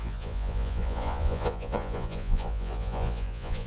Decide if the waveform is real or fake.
fake